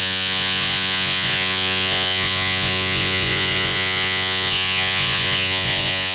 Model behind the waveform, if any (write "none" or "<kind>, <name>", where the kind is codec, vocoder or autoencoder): vocoder, Vocos